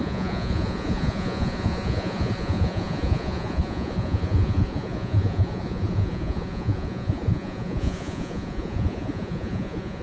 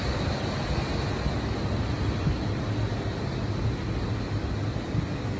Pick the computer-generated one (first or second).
first